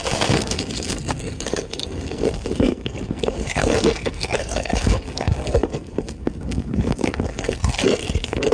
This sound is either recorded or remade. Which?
remade